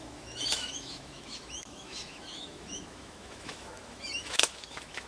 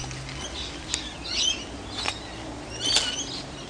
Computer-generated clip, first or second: first